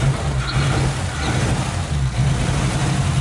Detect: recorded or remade recorded